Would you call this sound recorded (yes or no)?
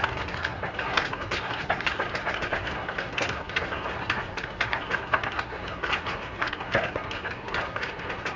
no